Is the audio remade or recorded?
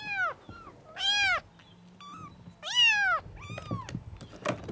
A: recorded